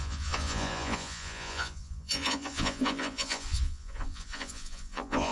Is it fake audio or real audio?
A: fake